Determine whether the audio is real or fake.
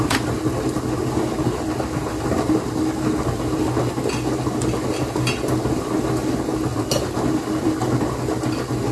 real